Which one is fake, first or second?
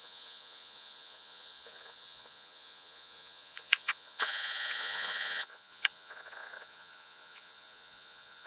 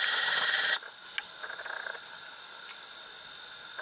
first